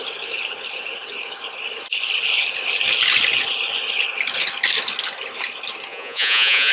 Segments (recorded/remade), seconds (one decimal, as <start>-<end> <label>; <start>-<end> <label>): 0.0-5.9 recorded; 5.9-6.7 remade